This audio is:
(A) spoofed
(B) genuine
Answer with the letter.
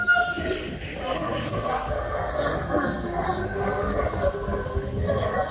A